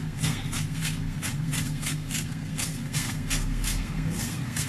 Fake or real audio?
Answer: fake